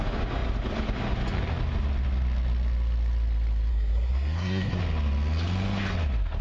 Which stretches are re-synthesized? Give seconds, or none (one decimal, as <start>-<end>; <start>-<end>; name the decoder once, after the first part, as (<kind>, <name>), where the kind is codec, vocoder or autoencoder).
3.7-4.8 (codec, SNAC)